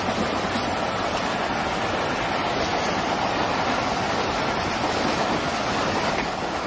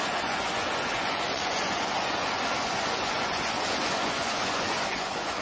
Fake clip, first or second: second